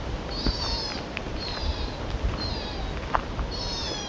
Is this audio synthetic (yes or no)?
no